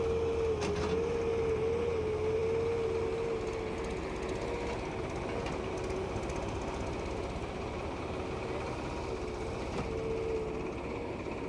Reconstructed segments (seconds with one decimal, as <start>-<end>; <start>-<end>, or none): none